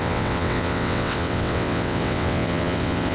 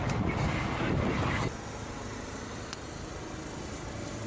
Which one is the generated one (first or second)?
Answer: first